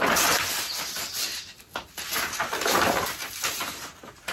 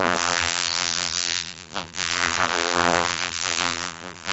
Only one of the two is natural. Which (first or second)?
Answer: first